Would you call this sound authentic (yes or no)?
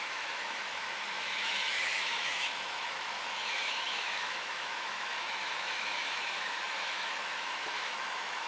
no